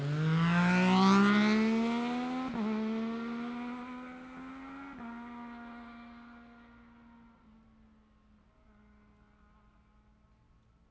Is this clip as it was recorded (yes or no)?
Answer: yes